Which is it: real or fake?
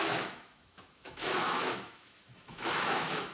fake